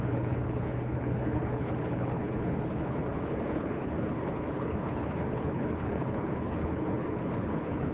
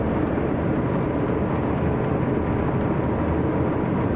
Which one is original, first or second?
second